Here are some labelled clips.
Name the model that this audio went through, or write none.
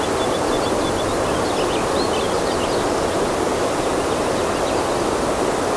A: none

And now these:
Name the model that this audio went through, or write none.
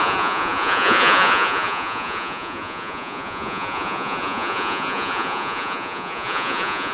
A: vocoder, Vocos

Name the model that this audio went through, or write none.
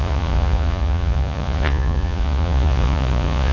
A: vocoder, Vocos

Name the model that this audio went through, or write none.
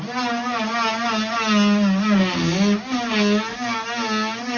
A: none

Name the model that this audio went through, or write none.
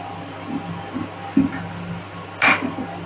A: none